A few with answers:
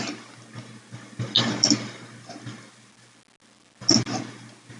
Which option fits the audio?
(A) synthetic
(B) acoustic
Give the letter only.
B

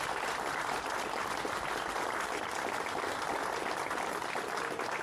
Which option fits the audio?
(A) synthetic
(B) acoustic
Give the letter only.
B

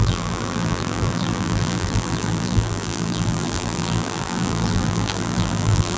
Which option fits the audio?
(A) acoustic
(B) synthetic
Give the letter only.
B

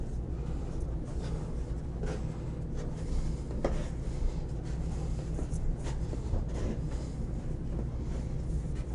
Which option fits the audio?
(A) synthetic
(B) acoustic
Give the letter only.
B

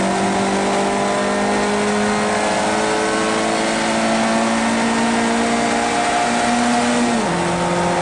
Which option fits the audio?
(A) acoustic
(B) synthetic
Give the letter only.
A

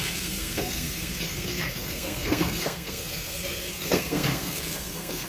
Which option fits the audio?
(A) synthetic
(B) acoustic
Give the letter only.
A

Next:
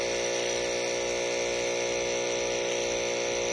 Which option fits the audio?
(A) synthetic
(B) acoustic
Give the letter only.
B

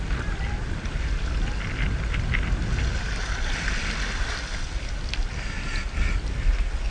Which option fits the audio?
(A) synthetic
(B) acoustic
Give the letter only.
B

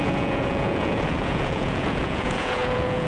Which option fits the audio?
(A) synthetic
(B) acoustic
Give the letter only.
A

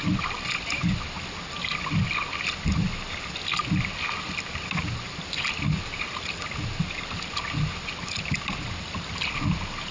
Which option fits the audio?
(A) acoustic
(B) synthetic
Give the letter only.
A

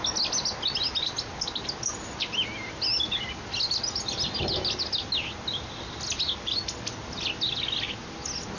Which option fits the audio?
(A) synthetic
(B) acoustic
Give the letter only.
B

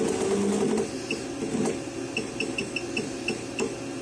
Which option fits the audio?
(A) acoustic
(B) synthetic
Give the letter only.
A